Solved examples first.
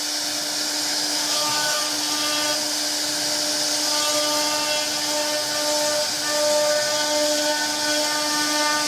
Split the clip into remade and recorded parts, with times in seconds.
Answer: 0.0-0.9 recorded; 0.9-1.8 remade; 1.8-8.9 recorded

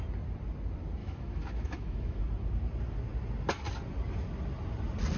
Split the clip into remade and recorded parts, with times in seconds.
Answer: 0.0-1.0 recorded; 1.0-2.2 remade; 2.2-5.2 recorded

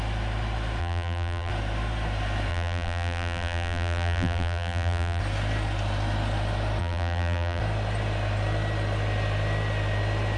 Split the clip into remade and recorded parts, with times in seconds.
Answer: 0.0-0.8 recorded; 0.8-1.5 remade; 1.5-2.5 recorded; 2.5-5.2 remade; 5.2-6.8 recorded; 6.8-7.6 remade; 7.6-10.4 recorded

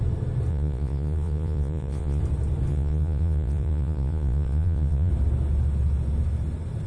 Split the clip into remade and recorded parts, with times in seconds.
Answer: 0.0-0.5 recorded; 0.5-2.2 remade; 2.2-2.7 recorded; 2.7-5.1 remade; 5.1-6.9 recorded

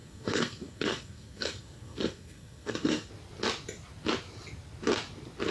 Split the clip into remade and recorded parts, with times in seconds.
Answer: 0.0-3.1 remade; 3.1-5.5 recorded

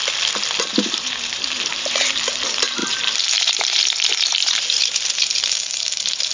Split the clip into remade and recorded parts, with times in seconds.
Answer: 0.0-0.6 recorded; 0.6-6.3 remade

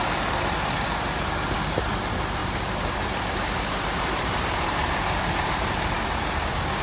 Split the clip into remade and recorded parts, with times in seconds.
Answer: 0.0-2.4 recorded; 2.4-5.6 remade; 5.6-6.8 recorded